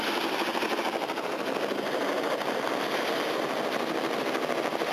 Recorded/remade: recorded